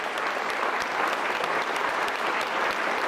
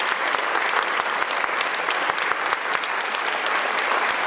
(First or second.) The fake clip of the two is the first